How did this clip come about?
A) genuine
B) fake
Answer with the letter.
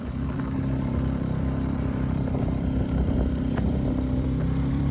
B